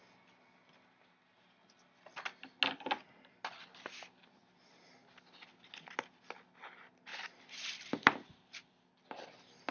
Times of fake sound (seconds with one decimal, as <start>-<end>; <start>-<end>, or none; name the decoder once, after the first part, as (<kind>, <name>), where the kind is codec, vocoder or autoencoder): 7.1-8.5 (vocoder, BigVGAN v2)